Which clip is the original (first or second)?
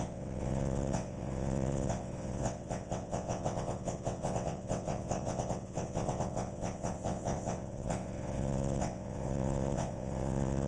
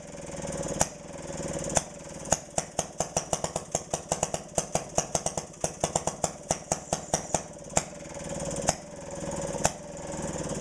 second